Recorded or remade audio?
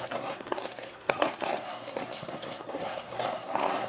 remade